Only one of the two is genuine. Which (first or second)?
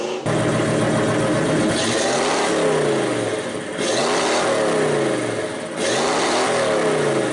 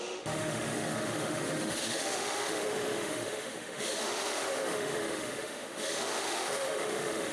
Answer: first